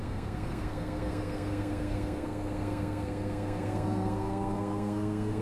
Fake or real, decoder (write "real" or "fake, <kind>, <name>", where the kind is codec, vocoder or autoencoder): fake, codec, SNAC